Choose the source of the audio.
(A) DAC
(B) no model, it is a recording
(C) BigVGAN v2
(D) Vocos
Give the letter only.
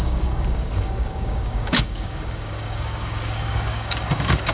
A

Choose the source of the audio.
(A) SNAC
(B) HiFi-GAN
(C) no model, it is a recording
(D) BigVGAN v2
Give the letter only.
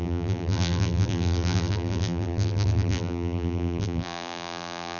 D